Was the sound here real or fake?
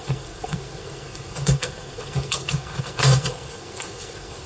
fake